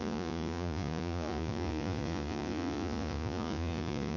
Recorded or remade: remade